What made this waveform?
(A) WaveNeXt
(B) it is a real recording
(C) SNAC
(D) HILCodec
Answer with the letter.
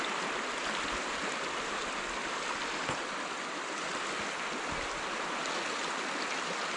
B